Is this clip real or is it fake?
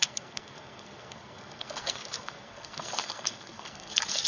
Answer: fake